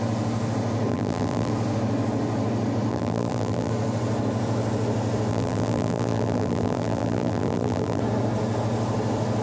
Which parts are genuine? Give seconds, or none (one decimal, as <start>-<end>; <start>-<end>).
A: 0.0-0.9; 1.5-2.9; 3.7-5.3; 8.0-9.4